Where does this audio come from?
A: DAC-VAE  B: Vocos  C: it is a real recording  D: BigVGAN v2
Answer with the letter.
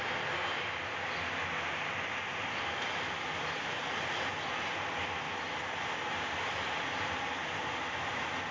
C